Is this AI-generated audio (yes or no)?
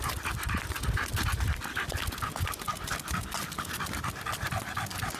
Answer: no